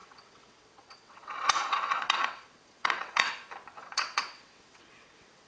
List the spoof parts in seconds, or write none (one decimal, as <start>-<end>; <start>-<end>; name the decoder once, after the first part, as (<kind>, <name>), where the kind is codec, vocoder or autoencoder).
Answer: 0.0-3.3 (vocoder, WaveNeXt); 3.8-5.5